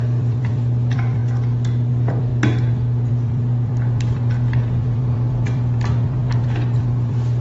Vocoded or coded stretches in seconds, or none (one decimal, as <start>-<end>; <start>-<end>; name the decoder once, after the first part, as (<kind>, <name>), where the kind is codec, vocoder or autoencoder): 0.0-1.2 (vocoder, BigVGAN v2); 1.9-2.3; 3.1-7.4